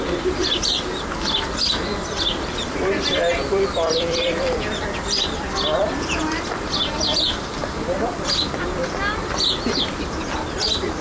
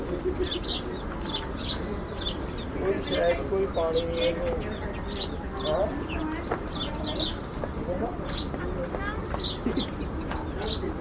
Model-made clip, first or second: first